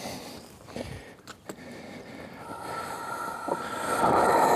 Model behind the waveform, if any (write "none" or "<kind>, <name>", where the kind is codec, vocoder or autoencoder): none